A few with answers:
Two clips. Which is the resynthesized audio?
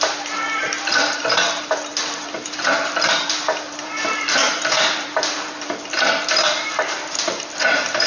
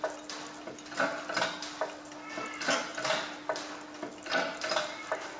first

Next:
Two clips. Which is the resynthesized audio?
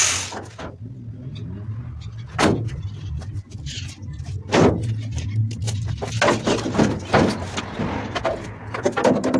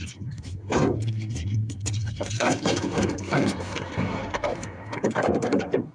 second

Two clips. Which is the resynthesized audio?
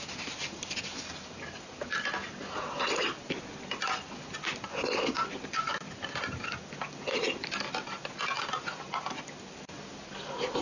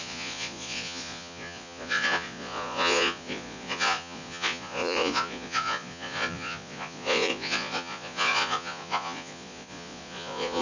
second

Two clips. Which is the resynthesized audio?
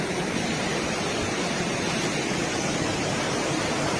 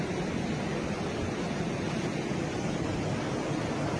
first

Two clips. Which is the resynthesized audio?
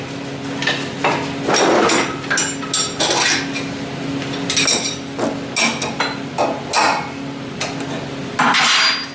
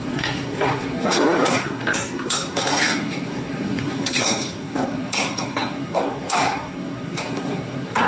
second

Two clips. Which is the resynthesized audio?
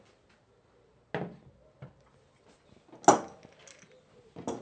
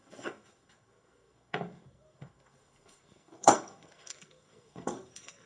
second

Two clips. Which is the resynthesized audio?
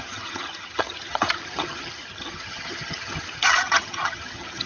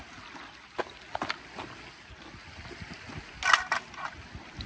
first